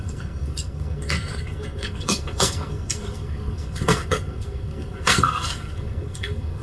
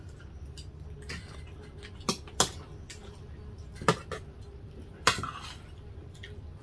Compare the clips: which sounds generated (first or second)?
first